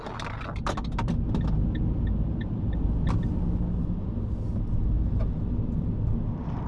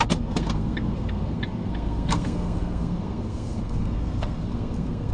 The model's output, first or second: second